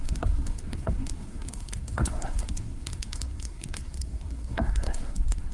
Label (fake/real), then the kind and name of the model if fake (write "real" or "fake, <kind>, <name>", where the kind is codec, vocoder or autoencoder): fake, codec, SNAC